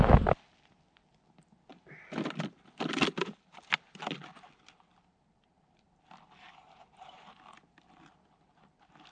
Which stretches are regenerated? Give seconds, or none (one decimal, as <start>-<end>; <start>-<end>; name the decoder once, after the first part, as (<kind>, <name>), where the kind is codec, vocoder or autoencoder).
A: none